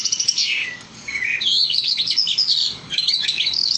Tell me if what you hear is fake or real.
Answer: fake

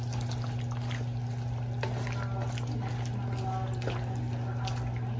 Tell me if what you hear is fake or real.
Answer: real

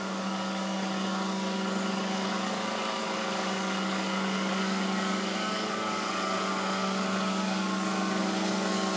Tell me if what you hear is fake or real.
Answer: fake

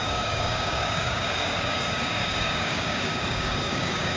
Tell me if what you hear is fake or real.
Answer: fake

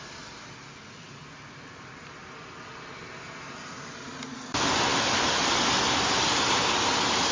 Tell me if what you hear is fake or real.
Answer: real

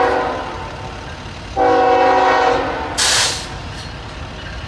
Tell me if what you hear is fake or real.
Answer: real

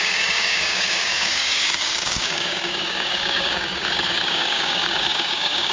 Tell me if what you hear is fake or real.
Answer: fake